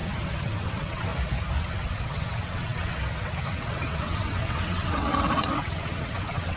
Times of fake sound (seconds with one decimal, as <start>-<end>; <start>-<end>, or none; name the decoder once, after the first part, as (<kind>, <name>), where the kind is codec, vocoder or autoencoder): 0.0-1.1 (vocoder, WaveNeXt); 1.6-6.6